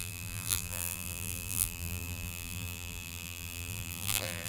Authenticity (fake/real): fake